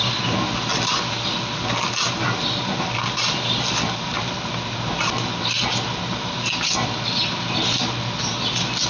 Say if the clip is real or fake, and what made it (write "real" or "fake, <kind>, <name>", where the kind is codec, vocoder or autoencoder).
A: real